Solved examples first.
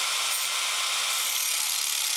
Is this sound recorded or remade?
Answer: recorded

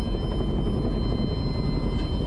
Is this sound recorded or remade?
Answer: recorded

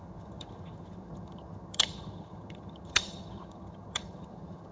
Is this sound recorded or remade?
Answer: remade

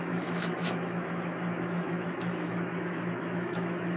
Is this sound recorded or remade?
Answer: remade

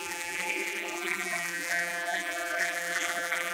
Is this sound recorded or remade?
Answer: remade